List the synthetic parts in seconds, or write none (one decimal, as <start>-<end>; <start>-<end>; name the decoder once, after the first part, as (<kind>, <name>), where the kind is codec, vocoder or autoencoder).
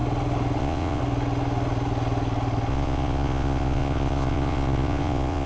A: 0.6-1.0 (vocoder, Vocos); 2.7-5.5